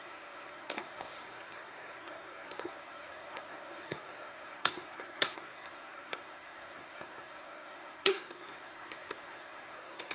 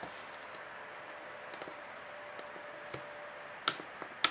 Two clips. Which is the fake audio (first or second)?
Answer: first